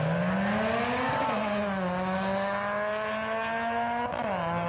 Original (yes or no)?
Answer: yes